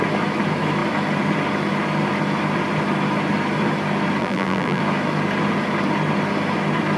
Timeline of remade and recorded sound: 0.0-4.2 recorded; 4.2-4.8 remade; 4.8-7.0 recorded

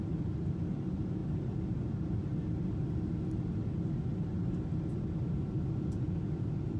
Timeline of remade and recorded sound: 0.0-1.2 remade; 1.2-5.3 recorded; 5.3-6.8 remade

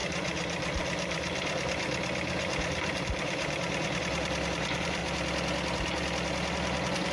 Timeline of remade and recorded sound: 0.0-5.0 remade; 5.0-7.1 recorded